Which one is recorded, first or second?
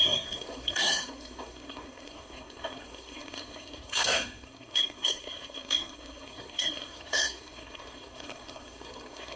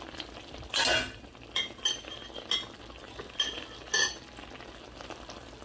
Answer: second